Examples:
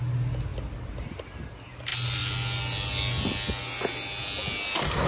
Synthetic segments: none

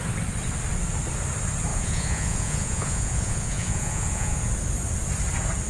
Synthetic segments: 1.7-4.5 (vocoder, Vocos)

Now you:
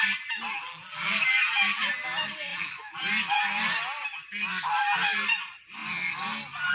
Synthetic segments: 0.5-1.9 (vocoder, BigVGAN v2); 2.5-3.4